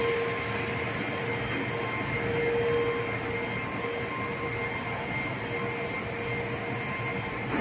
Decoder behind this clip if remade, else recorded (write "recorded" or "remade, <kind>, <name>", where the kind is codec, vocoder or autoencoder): recorded